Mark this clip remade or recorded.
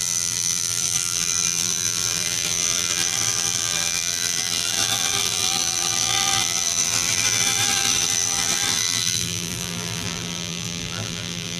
remade